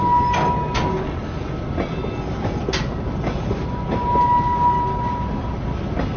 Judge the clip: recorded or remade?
recorded